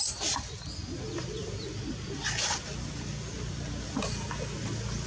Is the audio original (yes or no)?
yes